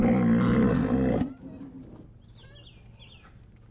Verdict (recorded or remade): recorded